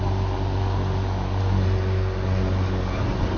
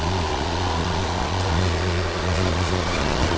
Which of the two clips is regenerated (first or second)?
second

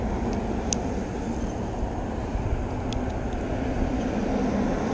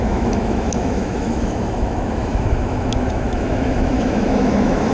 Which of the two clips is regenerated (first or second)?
second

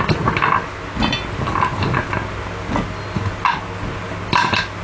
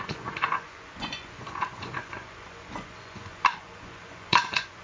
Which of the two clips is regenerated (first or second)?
second